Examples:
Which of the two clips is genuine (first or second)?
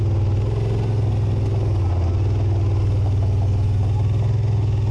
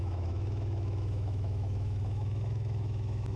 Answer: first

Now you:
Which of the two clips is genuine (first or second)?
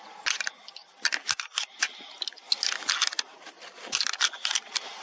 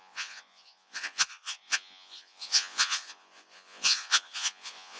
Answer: first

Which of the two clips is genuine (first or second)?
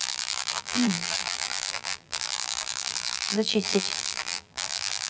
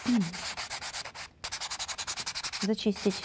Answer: second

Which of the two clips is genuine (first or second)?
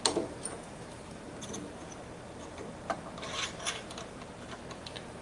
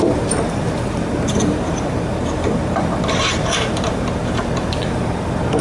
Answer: first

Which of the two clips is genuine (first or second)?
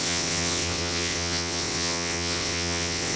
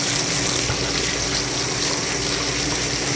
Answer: second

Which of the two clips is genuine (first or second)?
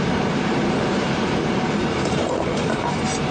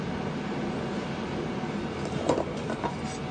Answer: second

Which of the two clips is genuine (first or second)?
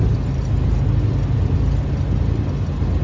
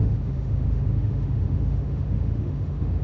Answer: first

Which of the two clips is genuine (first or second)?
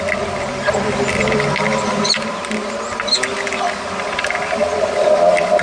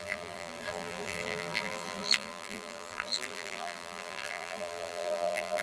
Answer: first